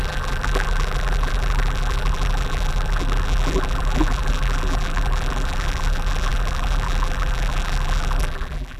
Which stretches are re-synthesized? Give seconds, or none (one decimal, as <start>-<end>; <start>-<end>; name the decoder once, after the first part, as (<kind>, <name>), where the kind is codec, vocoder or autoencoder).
0.0-8.8 (vocoder, BigVGAN v2)